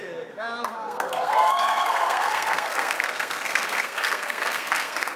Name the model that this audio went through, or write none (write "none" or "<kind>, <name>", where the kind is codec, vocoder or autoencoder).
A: codec, SNAC